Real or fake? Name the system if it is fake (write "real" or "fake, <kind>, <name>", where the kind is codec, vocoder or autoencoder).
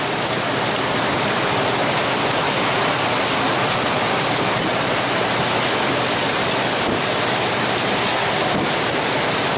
real